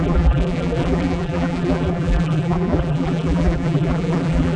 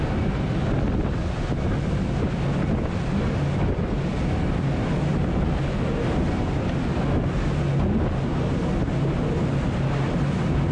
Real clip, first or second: second